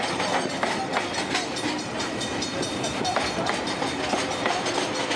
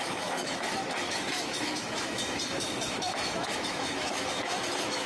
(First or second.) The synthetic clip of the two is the second